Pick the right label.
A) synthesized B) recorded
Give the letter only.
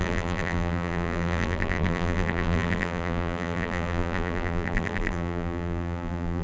A